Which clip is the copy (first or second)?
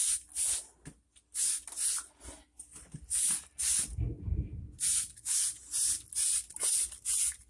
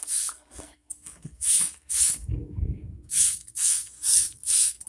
second